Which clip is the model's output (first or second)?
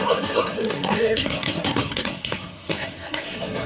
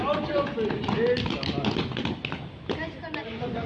first